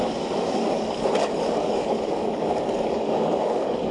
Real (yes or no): no